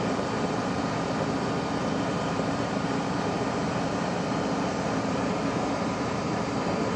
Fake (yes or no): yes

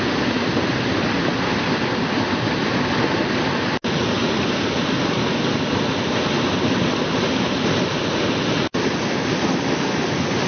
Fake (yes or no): no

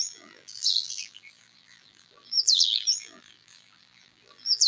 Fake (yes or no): yes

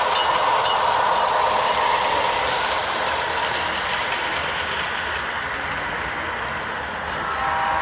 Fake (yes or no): no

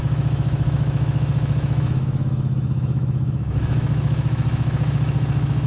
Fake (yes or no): yes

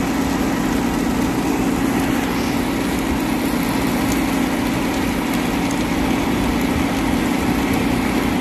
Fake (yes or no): no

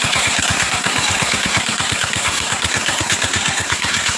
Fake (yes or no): yes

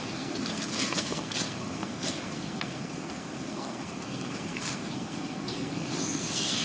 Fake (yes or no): yes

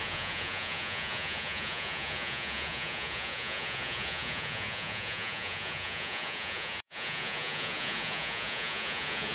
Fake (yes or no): yes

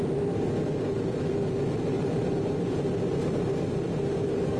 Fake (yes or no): no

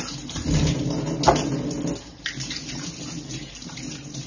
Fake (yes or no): no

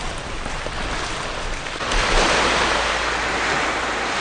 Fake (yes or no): no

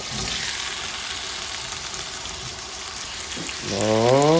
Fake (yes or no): no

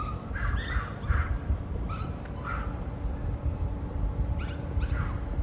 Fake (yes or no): no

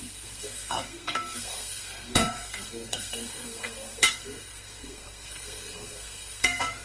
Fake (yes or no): yes